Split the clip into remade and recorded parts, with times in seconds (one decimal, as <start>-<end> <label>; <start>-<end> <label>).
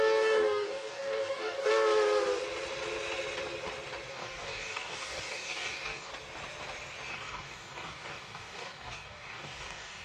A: 0.0-1.7 remade; 1.7-4.1 recorded; 4.1-6.1 remade; 6.1-7.1 recorded; 7.1-10.0 remade